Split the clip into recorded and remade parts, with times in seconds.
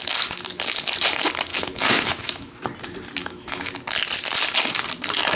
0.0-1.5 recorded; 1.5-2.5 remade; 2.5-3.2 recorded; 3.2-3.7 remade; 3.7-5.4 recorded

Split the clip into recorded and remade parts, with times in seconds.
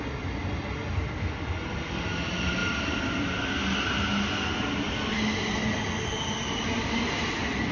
0.0-7.7 recorded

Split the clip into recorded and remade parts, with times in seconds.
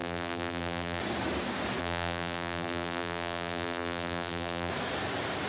0.0-1.0 remade; 1.0-1.8 recorded; 1.8-4.7 remade; 4.7-5.5 recorded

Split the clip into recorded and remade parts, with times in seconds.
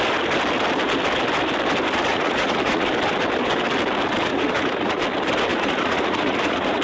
0.0-2.1 recorded; 2.1-2.9 remade; 2.9-4.3 recorded; 4.3-5.0 remade; 5.0-5.5 recorded; 5.5-6.8 remade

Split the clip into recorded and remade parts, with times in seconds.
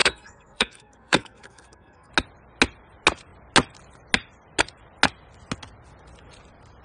0.0-2.1 remade; 2.1-6.8 recorded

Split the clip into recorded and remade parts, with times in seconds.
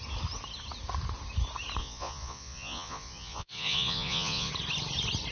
0.0-1.8 recorded; 1.8-4.5 remade; 4.5-5.3 recorded